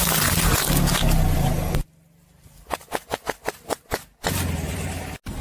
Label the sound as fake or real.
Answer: real